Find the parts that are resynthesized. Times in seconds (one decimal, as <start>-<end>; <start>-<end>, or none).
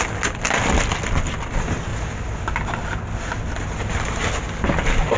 none